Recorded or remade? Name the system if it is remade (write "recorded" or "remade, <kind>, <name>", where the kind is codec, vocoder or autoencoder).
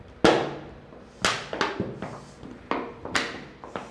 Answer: recorded